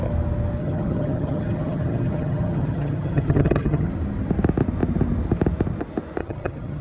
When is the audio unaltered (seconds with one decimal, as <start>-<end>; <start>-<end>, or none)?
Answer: 0.0-0.6; 3.9-6.2